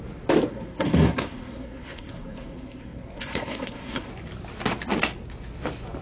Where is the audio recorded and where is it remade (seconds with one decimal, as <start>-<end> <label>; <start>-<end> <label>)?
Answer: 0.0-0.5 recorded; 0.5-4.1 remade; 4.1-6.0 recorded